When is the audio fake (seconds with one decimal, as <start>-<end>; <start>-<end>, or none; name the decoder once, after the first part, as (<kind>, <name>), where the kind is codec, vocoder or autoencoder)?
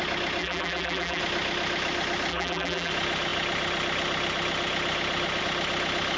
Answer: 0.4-1.2 (vocoder, BigVGAN v2); 2.3-2.9